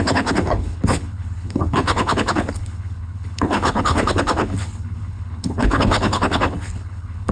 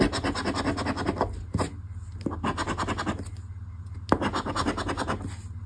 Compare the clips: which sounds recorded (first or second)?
second